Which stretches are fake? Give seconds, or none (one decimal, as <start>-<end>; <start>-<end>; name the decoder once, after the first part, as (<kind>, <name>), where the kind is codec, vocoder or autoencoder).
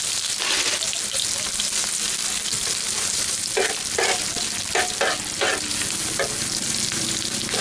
none